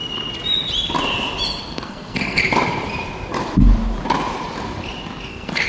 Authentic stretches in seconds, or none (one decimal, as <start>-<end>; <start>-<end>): 0.0-1.6; 2.4-5.3